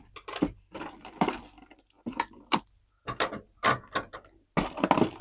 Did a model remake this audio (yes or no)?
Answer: no